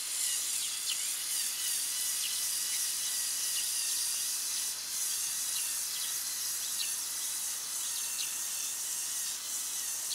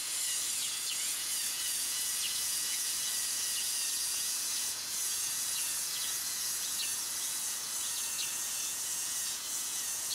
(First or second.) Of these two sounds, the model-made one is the second